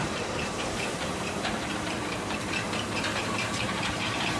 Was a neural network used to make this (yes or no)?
yes